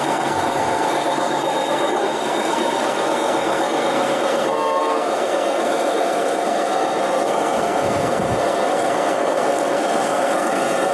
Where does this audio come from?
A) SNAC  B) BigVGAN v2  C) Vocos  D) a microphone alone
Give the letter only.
A